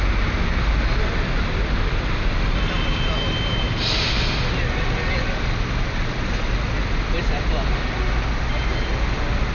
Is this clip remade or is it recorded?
recorded